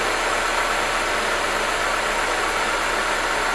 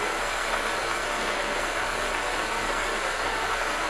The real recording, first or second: first